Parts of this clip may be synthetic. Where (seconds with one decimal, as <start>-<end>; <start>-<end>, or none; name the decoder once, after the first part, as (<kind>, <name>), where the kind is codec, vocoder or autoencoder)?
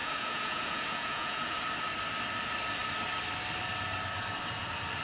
0.0-1.6 (vocoder, Vocos)